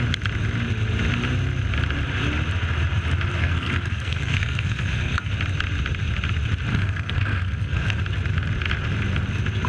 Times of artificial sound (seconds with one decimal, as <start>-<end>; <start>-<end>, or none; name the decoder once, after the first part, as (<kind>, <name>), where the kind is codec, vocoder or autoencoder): 3.4-5.3 (codec, SNAC); 6.7-8.0